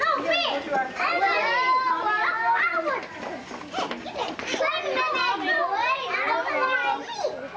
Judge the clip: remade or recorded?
recorded